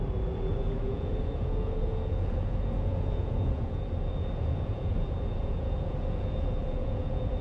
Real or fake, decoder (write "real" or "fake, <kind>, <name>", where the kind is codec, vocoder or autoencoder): fake, vocoder, Vocos